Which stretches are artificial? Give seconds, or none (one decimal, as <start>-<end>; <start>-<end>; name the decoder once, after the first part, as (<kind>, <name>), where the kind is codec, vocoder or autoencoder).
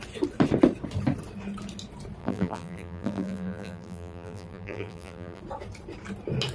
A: 2.2-5.4 (vocoder, BigVGAN v2)